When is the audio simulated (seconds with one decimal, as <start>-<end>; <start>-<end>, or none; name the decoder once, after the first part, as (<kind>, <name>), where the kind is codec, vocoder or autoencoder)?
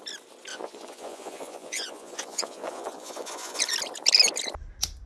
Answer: 0.5-3.6 (vocoder, Vocos)